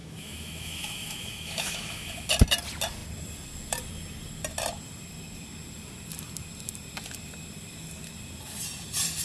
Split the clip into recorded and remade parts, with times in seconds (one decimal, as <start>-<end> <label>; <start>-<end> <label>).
0.0-2.3 remade; 2.3-9.2 recorded